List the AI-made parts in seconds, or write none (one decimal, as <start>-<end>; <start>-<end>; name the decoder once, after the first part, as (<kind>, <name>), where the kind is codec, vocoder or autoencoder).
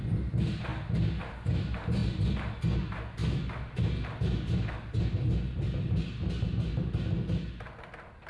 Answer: none